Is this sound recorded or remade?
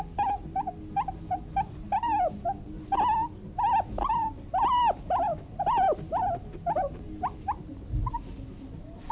recorded